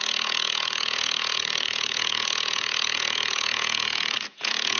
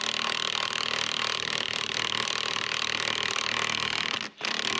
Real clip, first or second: second